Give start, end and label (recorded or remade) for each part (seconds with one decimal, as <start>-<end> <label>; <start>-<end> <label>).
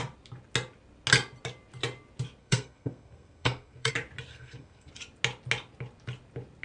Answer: 0.0-2.4 recorded; 2.4-3.9 remade; 3.9-4.3 recorded; 4.3-4.9 remade; 4.9-6.6 recorded